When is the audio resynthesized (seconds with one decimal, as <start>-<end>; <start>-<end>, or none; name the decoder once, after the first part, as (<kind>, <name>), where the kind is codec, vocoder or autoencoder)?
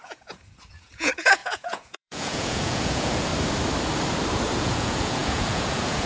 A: 0.0-3.3 (vocoder, Vocos); 4.6-6.1